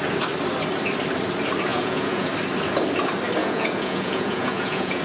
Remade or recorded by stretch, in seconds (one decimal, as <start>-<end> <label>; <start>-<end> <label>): 0.0-1.7 recorded; 1.7-2.3 remade; 2.3-3.4 recorded; 3.4-5.0 remade